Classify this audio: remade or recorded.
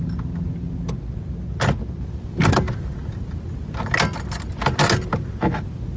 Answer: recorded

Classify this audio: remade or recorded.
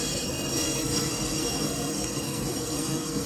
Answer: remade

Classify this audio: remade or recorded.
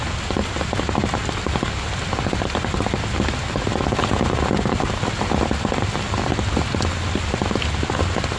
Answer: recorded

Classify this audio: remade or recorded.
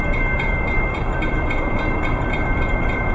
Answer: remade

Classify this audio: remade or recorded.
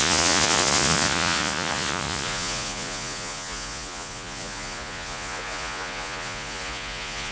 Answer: remade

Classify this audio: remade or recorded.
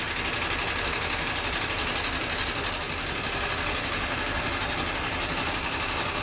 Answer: recorded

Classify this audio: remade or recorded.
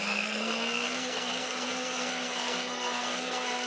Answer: remade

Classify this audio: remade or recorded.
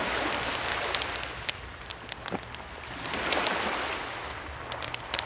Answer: recorded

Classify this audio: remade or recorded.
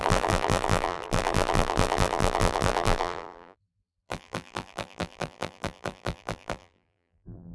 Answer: remade